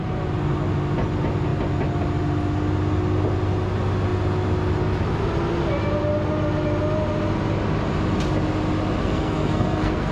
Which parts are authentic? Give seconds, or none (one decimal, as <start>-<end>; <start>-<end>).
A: 0.0-9.0